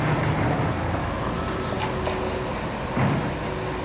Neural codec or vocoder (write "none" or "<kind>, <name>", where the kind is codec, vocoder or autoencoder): none